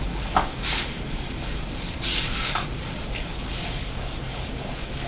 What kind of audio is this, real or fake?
fake